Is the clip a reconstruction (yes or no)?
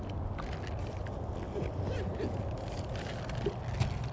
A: no